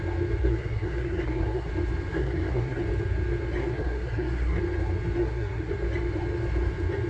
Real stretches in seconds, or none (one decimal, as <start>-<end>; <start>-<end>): 0.0-0.4; 1.7-2.1; 2.8-3.6; 4.6-5.2; 5.7-7.1

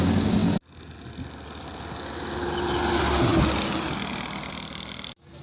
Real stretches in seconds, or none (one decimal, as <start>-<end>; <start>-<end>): 0.0-5.4

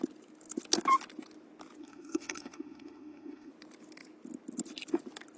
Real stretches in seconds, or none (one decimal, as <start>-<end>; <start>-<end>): 0.0-1.8; 3.5-5.4

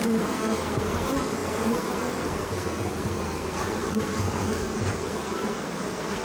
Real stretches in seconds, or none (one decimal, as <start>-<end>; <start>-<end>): none